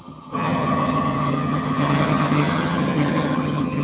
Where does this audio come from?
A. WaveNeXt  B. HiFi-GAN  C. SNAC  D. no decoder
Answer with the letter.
B